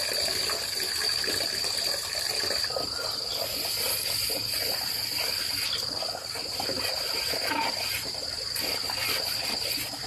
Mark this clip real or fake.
real